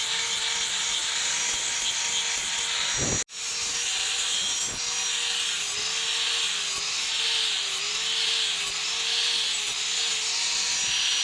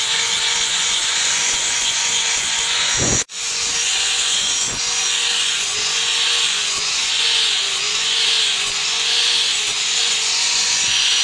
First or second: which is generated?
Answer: second